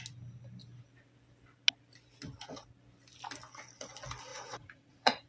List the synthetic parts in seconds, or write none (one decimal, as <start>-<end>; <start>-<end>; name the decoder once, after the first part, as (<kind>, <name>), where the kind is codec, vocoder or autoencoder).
4.3-5.3 (vocoder, Vocos)